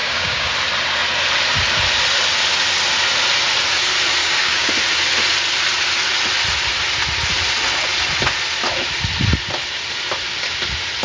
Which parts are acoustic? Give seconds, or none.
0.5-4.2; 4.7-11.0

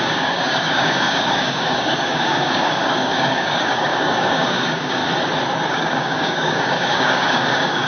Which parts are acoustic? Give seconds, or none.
5.0-5.7